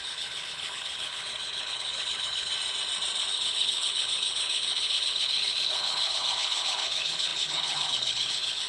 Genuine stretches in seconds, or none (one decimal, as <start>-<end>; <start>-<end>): 2.5-3.3